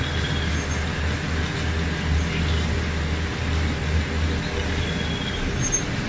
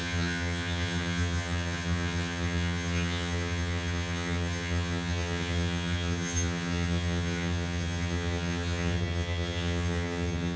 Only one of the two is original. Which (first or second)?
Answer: first